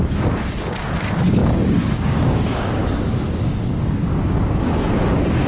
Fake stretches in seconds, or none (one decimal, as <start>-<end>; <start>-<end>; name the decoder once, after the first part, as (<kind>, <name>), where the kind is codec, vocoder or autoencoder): 0.0-5.5 (codec, DAC)